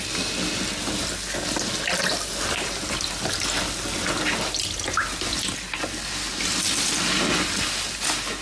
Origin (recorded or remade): recorded